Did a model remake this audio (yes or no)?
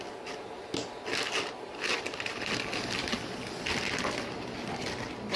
no